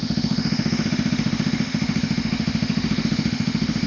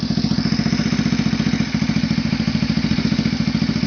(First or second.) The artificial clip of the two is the first